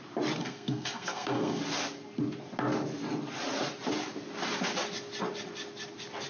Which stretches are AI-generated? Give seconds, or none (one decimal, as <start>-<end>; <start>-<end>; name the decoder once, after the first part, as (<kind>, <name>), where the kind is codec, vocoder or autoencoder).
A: 0.4-1.6 (codec, SNAC)